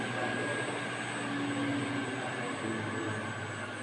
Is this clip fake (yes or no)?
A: no